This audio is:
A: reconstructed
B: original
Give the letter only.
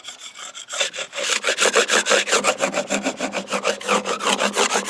B